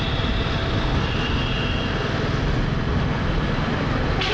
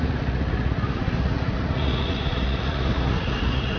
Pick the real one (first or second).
first